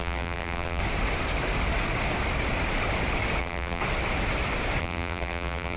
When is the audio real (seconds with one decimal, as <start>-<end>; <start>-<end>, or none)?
0.8-3.4; 3.8-4.8